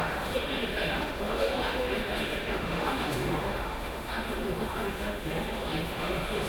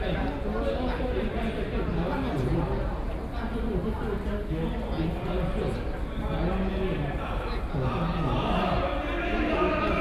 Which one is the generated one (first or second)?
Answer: first